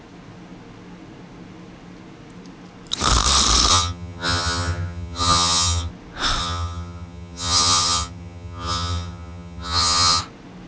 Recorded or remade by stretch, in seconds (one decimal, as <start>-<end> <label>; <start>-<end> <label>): 0.0-3.7 recorded; 3.7-5.9 remade; 5.9-6.4 recorded; 6.4-10.2 remade; 10.2-10.7 recorded